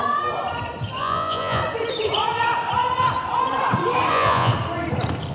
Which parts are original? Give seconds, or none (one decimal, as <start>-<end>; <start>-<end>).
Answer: 0.0-1.0; 1.6-4.1; 4.5-5.3